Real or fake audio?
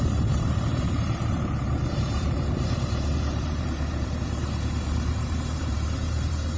fake